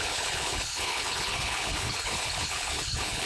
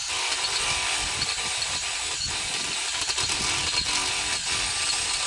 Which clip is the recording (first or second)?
second